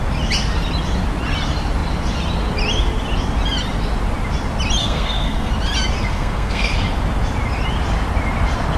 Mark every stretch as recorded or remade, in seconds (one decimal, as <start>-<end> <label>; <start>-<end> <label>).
0.0-4.8 recorded; 4.8-5.5 remade; 5.5-6.1 recorded; 6.1-6.7 remade; 6.7-8.8 recorded